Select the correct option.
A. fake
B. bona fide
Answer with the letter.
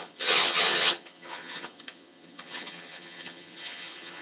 A